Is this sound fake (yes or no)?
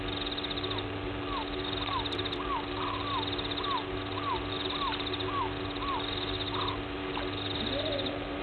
no